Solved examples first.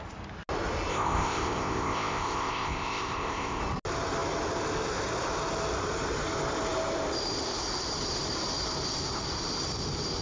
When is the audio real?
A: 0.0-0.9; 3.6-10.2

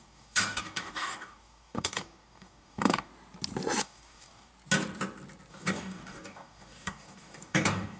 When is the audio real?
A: 3.1-3.8; 4.5-5.5

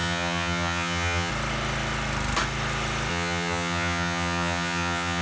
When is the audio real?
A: 1.3-3.1

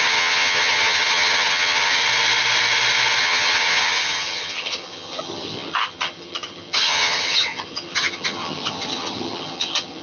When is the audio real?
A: 2.0-3.2

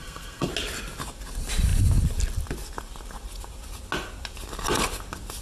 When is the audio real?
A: 0.5-5.4

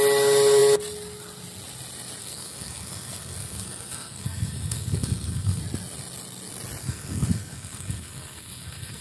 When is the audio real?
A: 0.0-2.2; 5.6-6.8

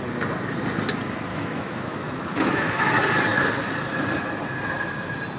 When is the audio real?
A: 0.0-1.3; 2.9-5.4

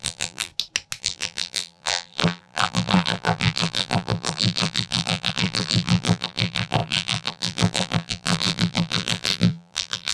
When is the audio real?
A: 0.5-1.0